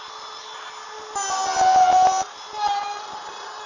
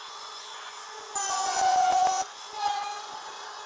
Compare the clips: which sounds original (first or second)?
first